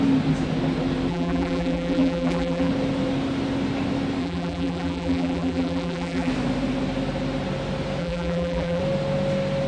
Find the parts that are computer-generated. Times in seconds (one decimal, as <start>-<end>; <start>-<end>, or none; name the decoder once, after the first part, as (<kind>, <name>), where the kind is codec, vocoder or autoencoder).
1.1-2.7 (vocoder, BigVGAN v2); 4.2-6.3; 8.0-8.8